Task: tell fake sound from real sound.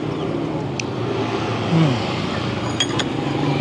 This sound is real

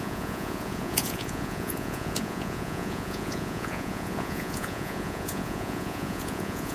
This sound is fake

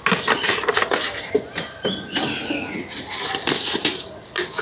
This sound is real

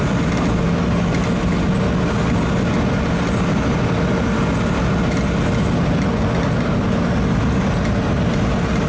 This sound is real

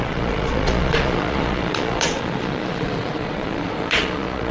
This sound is fake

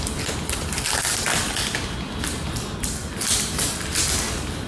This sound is real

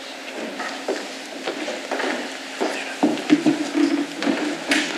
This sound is real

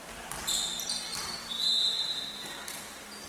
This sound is real